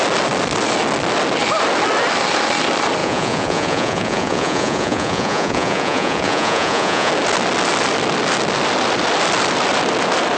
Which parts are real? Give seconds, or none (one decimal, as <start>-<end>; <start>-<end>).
0.0-3.0; 7.1-10.4